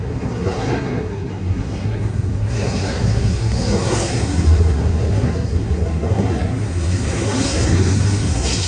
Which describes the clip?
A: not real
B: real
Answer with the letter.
A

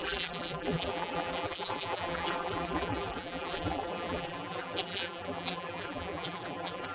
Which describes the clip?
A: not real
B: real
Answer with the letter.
A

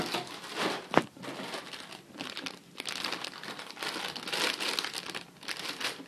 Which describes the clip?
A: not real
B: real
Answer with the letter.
B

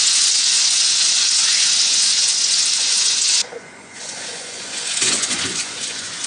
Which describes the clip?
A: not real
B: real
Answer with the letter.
A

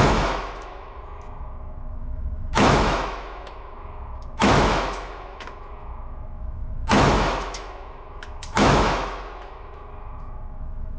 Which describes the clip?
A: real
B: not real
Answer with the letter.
B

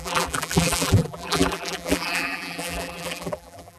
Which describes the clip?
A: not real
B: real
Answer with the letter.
A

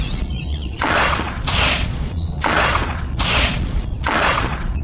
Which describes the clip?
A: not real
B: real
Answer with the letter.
A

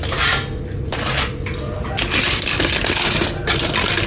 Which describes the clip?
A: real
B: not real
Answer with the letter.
A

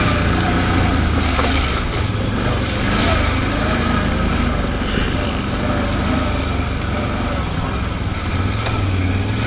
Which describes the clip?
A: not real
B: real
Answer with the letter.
B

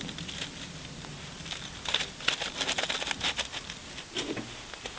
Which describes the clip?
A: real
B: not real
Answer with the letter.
A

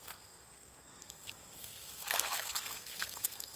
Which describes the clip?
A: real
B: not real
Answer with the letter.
B